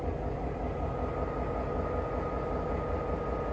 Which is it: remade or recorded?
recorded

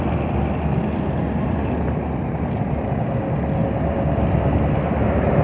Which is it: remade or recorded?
recorded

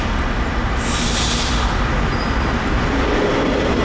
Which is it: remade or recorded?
recorded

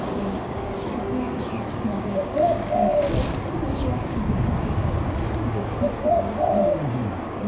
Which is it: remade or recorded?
remade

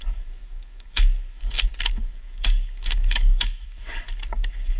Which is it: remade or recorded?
remade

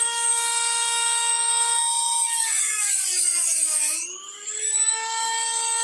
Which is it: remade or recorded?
remade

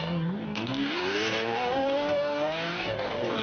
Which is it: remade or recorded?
remade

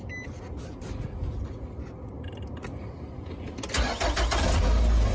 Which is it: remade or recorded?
recorded